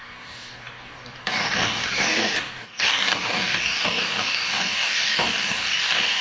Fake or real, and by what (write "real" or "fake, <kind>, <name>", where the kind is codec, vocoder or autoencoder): fake, codec, DAC